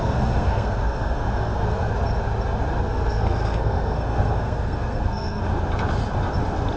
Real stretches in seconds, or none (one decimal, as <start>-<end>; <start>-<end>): 1.9-2.7; 5.4-6.8

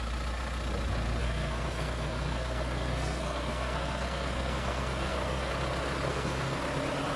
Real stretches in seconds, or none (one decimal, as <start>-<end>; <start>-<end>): 0.0-1.2; 5.5-6.1; 6.6-7.2

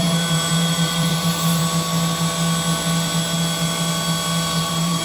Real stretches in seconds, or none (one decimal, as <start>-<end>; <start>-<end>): 1.6-4.6

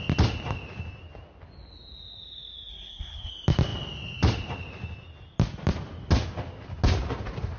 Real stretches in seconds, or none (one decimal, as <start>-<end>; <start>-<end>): 0.0-2.7; 3.3-7.6

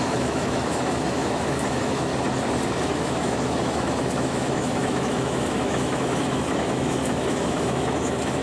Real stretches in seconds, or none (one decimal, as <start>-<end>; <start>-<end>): 2.1-2.8

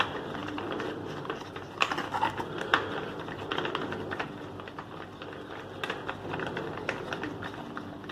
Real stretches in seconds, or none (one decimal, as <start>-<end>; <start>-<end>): 0.0-8.1

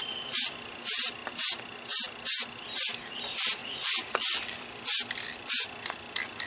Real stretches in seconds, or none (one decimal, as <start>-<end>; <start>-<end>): 0.0-3.6; 4.4-6.5